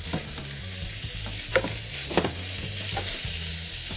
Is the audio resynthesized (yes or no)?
no